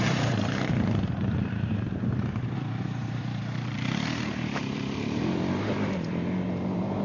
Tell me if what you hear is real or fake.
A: fake